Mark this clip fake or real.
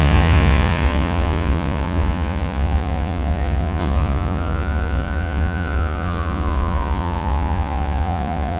fake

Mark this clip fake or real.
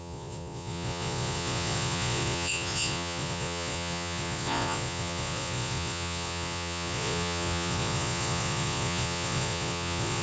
fake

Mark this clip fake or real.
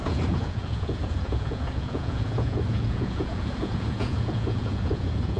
fake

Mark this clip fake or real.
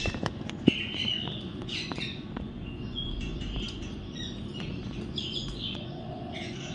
fake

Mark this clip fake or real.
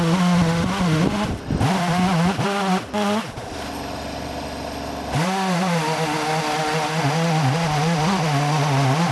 real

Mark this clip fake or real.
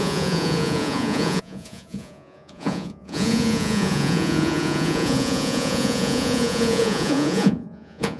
fake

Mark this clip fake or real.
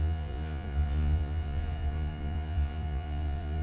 fake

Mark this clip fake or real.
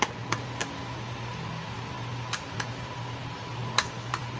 real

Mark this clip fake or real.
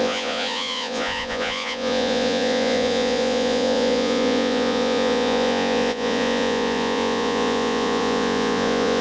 fake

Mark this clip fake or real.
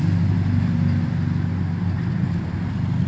real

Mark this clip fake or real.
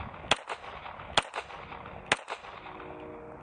real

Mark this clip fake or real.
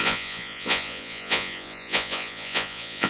fake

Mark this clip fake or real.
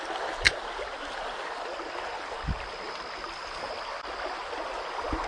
real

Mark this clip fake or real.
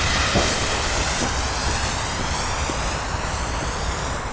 real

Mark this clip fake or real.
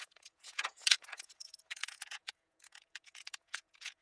fake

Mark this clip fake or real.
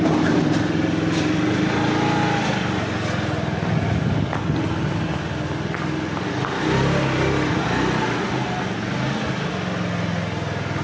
real